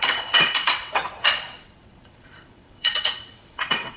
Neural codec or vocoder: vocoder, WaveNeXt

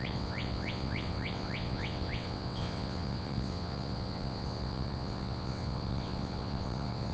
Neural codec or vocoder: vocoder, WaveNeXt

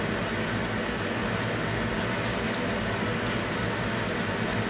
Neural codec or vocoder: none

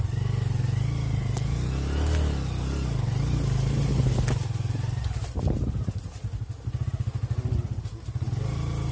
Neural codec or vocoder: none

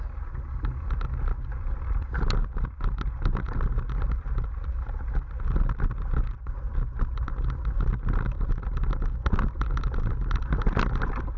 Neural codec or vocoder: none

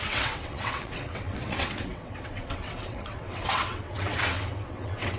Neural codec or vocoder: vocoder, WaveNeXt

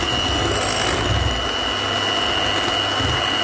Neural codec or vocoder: none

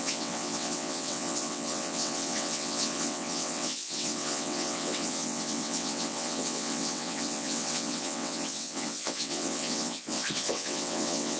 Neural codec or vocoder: vocoder, WaveNeXt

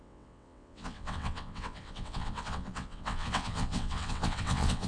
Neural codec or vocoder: vocoder, WaveNeXt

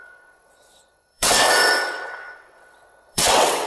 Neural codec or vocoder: vocoder, WaveNeXt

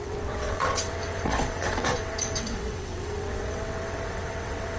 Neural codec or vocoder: vocoder, WaveNeXt